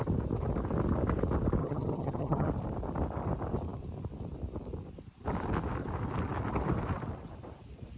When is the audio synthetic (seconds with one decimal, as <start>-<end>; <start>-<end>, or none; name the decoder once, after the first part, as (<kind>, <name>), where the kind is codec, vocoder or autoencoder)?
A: 1.6-2.5 (vocoder, HiFi-GAN)